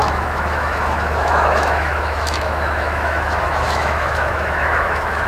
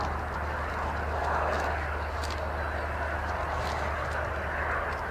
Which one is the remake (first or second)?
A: first